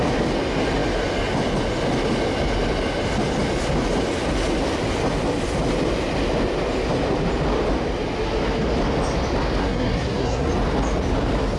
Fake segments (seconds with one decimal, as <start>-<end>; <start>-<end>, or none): 9.6-10.5